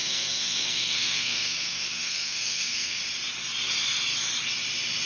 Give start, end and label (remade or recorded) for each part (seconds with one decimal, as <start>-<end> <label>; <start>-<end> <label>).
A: 0.0-3.0 remade; 3.0-5.1 recorded